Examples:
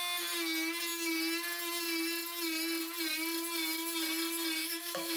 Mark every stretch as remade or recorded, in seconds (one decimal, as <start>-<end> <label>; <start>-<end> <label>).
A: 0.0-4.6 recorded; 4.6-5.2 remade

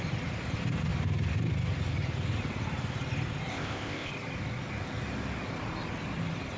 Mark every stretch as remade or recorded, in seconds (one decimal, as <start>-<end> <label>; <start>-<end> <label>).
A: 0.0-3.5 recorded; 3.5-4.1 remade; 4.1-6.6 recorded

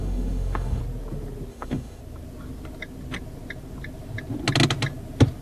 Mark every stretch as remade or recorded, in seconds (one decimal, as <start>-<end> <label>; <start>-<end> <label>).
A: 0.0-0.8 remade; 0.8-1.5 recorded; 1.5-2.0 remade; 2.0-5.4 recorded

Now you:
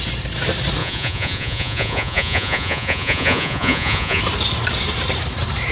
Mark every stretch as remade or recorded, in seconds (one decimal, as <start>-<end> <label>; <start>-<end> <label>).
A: 0.0-0.8 recorded; 0.8-4.2 remade; 4.2-5.7 recorded